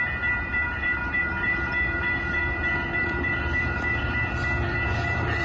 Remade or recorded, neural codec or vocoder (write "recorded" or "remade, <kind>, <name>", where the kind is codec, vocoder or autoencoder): remade, vocoder, BigVGAN v2